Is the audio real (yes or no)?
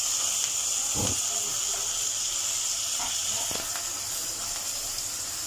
yes